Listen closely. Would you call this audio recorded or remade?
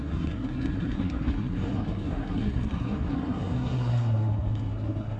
remade